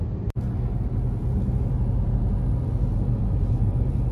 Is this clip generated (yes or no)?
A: no